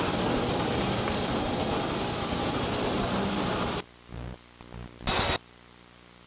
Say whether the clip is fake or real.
real